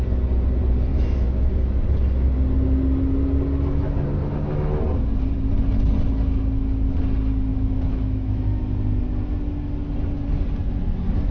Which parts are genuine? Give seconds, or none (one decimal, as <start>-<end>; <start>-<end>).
0.0-0.9; 1.5-7.5; 8.4-11.3